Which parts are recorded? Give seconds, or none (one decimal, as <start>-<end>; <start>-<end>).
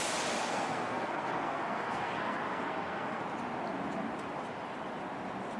0.0-0.4; 3.2-5.6